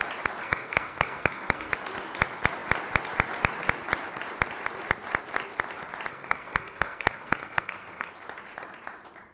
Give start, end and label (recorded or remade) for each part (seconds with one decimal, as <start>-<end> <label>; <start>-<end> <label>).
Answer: 0.0-0.4 recorded; 0.4-1.7 remade; 1.7-6.1 recorded; 6.1-8.1 remade; 8.1-9.3 recorded